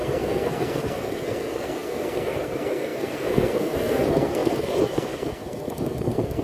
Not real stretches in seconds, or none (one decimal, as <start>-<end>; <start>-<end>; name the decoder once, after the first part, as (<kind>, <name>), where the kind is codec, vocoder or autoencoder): 0.0-6.4 (codec, SNAC)